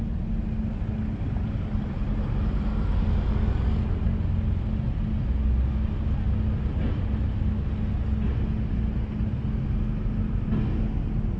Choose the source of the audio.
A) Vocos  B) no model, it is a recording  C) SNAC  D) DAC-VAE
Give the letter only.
B